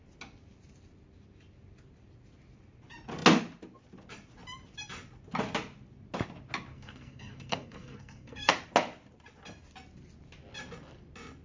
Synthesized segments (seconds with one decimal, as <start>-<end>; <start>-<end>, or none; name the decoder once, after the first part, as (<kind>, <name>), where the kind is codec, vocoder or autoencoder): 6.7-8.5 (codec, SNAC)